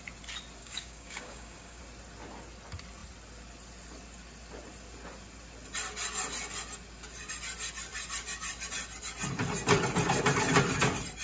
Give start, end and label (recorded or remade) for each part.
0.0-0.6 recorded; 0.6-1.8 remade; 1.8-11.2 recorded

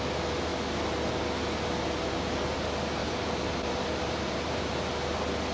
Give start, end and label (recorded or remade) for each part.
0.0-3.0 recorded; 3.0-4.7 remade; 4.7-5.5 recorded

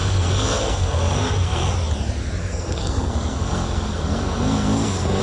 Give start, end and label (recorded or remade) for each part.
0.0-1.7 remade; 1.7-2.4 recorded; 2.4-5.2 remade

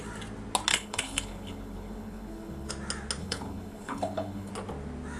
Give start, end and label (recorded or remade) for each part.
0.0-0.7 recorded; 0.7-2.7 remade; 2.7-3.2 recorded; 3.2-4.5 remade; 4.5-5.2 recorded